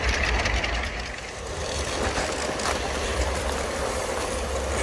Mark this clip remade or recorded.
remade